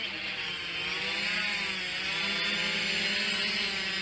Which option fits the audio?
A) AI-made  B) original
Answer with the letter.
B